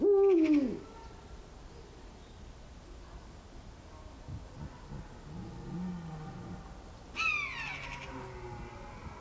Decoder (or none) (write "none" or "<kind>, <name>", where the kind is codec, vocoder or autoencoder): none